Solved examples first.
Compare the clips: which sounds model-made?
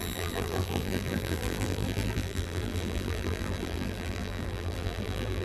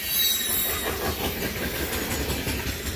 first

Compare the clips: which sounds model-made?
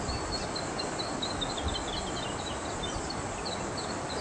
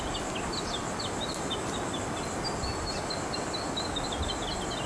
first